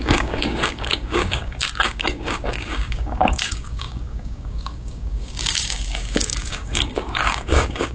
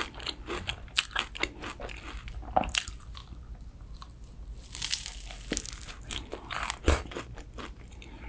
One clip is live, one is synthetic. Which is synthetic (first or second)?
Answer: first